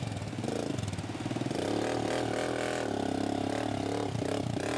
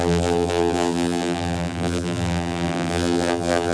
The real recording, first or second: first